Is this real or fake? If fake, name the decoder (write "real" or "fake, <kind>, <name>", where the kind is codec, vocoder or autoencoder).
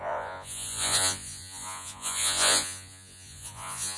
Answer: fake, vocoder, Vocos